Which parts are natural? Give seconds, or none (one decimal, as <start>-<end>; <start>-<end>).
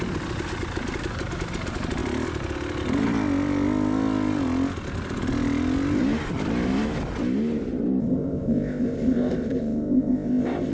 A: 0.0-8.0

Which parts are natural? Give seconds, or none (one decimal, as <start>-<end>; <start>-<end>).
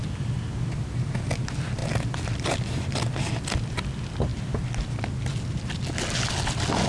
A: 0.0-6.9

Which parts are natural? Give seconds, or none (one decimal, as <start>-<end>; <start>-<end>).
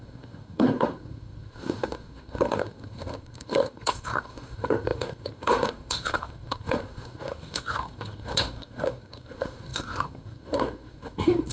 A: none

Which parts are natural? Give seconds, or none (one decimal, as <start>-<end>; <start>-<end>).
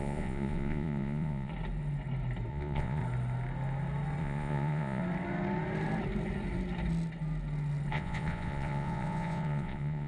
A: 1.5-2.5; 3.0-4.2; 5.0-7.9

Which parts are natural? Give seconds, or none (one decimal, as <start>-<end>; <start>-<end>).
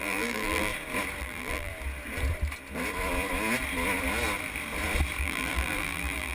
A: 0.7-1.2; 1.7-5.2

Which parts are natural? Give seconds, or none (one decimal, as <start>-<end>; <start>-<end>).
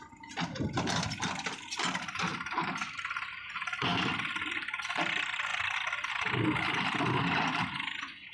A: 0.0-8.3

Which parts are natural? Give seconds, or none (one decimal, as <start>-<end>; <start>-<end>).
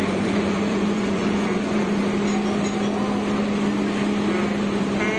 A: 2.0-5.2